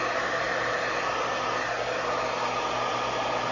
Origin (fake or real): real